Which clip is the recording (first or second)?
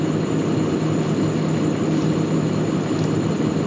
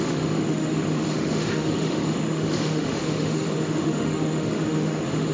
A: first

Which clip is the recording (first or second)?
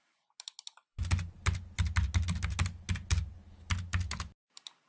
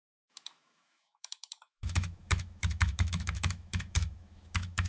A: first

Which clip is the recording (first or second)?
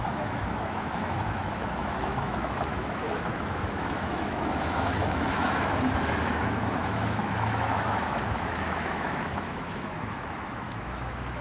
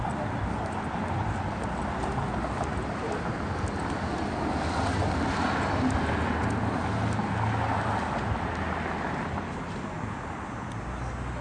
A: second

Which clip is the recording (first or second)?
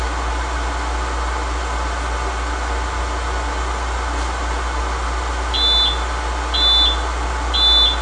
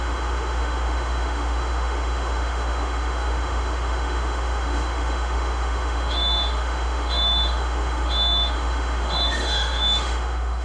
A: first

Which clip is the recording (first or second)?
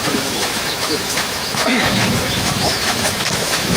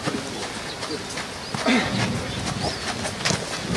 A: second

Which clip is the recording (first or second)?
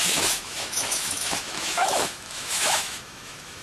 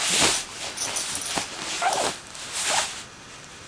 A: second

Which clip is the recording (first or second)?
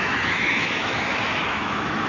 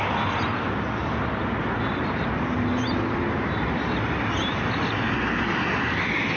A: second